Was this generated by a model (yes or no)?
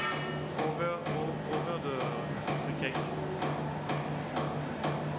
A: no